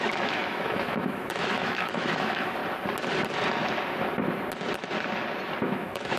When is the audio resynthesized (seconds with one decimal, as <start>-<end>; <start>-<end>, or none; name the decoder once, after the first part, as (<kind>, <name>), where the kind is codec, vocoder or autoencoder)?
0.0-2.6 (autoencoder, DAC-VAE); 5.6-6.2